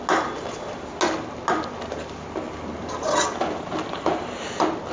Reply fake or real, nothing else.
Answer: real